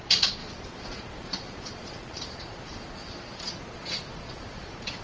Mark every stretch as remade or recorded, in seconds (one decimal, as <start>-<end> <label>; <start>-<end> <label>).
0.0-5.0 remade